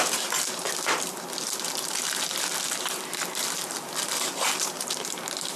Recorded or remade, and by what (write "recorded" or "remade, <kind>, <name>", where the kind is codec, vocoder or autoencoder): recorded